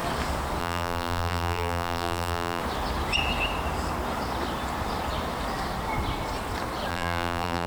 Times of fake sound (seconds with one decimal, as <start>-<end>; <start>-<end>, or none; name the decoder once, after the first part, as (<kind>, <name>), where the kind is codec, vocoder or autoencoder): 0.6-2.6 (vocoder, BigVGAN v2); 6.9-7.7